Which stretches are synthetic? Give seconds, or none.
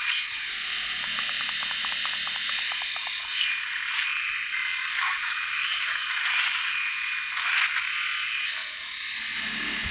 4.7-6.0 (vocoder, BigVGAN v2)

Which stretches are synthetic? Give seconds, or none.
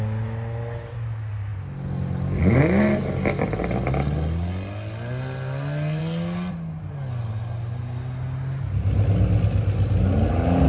none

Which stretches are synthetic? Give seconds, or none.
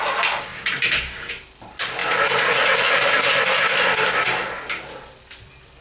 0.5-1.3 (vocoder, BigVGAN v2)